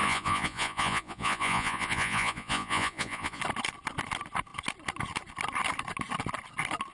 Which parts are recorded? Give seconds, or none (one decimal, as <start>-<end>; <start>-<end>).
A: 3.4-6.9

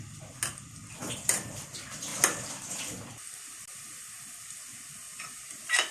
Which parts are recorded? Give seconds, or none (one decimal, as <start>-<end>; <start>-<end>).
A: 0.0-1.0; 1.7-5.9

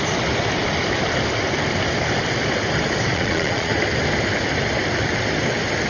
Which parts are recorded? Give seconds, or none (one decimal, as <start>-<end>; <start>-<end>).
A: 0.0-3.1; 3.7-5.9

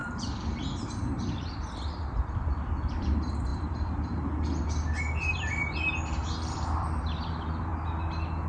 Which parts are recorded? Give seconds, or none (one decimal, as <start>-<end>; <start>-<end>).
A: 7.7-8.5

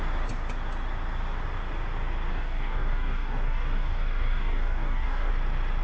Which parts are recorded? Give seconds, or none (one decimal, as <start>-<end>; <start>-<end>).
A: 0.0-2.3; 5.3-5.8

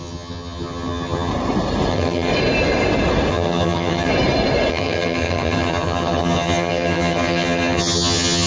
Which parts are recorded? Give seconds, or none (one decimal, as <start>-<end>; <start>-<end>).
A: 1.3-1.9; 2.3-3.3; 4.1-4.7

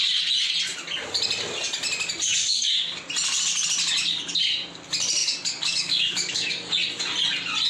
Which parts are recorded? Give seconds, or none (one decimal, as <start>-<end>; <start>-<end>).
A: 0.0-2.4; 3.0-5.2; 6.7-7.7